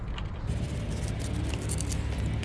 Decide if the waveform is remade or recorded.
recorded